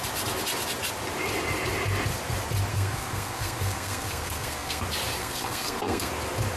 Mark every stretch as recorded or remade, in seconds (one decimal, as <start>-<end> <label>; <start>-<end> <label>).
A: 0.0-2.7 recorded; 2.7-4.8 remade; 4.8-5.2 recorded; 5.2-6.1 remade; 6.1-6.6 recorded